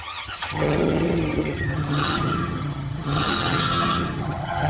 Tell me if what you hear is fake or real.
fake